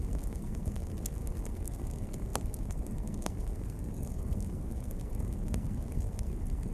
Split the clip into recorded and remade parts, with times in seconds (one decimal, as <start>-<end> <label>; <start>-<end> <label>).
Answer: 0.0-6.7 remade